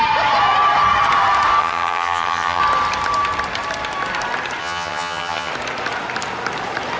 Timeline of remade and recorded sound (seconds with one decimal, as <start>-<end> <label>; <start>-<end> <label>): 0.0-1.6 recorded; 1.6-2.6 remade; 2.6-4.6 recorded; 4.6-5.5 remade; 5.5-7.0 recorded